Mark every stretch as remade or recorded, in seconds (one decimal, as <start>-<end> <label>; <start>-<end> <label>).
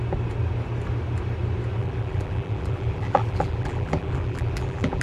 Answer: 0.0-1.8 recorded; 1.8-5.0 remade